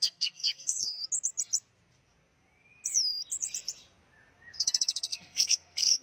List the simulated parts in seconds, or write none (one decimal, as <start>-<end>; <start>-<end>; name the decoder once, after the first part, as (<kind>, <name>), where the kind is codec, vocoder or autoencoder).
0.0-1.0 (codec, SNAC); 4.6-6.0